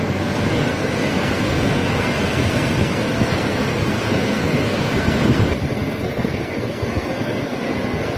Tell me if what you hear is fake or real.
fake